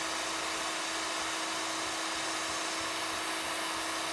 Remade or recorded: recorded